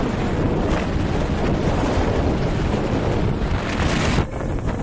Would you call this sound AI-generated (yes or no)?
no